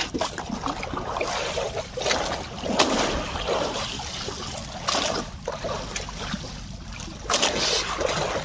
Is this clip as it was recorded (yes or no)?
yes